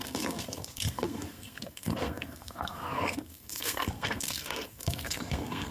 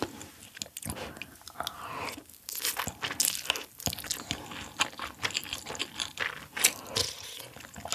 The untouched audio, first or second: second